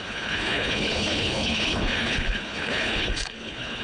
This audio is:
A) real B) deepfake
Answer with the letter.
B